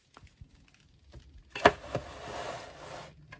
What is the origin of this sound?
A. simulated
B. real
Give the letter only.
B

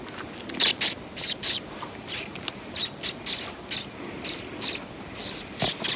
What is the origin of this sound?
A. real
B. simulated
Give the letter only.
A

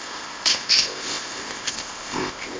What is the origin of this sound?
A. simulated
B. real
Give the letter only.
A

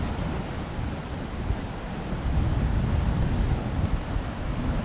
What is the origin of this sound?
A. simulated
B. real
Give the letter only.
B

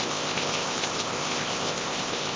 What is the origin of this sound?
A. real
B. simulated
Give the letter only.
B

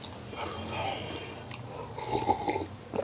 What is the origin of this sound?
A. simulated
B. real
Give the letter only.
B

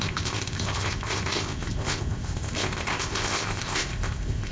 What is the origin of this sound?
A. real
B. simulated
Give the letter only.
B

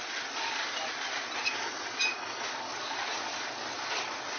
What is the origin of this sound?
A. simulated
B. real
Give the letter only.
B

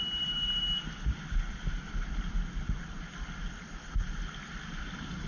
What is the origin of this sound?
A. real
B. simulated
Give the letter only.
A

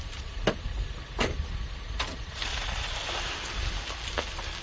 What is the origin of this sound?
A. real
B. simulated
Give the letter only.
A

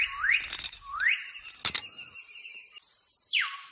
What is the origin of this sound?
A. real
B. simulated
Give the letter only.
A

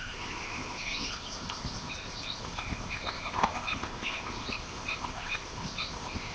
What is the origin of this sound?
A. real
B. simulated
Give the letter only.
B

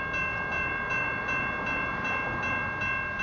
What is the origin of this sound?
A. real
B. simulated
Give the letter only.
A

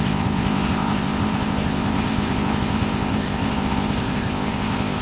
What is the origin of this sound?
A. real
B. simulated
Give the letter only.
B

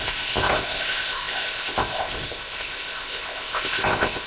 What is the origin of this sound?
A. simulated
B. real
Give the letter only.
A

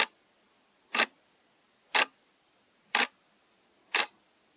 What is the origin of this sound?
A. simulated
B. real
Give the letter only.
B